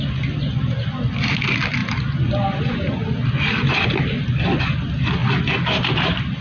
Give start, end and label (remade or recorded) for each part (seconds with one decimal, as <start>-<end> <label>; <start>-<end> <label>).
0.0-6.4 recorded